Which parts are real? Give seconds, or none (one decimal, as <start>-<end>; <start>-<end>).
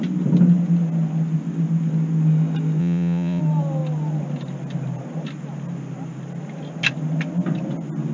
0.0-2.8; 3.4-8.1